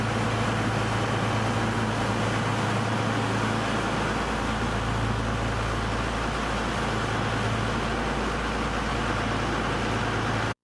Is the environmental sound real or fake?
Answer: real